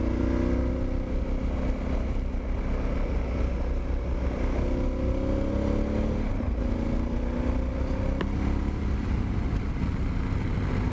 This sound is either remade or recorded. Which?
recorded